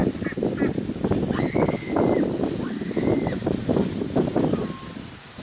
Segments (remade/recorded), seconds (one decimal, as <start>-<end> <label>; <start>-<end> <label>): 0.0-5.4 recorded

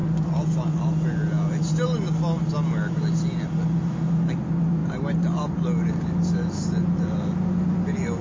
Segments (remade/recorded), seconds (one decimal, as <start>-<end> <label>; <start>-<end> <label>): 0.0-8.2 recorded

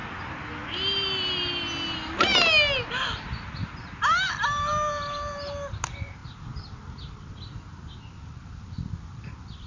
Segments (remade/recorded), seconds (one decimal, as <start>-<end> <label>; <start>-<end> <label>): 0.0-9.7 recorded